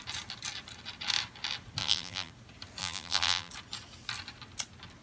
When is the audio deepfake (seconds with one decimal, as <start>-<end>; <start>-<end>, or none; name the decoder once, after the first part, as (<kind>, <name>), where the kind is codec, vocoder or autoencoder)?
1.8-2.3 (vocoder, BigVGAN v2); 2.8-3.5